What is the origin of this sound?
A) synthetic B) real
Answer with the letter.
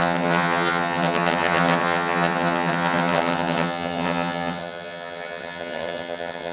A